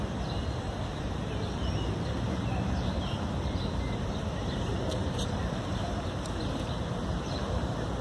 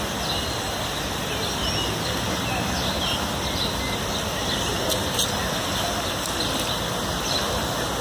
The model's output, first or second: first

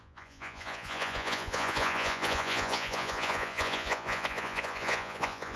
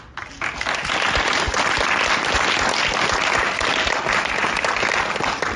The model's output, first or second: first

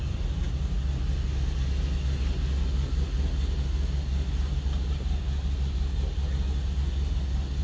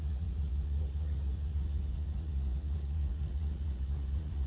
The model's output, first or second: second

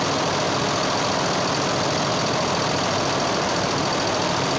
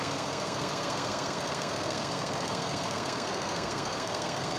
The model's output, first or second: second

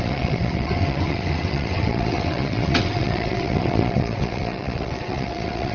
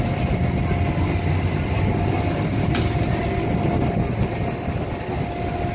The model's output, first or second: first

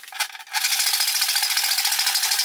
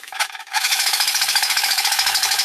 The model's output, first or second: second